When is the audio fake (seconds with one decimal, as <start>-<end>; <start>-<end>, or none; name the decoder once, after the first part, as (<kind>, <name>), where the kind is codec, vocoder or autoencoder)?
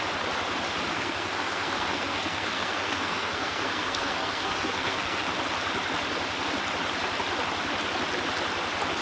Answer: 0.9-5.3 (codec, SNAC)